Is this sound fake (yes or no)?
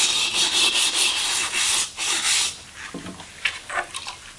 no